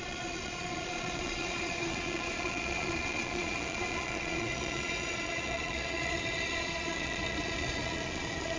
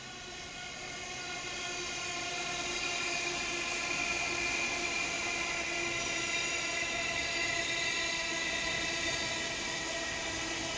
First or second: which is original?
second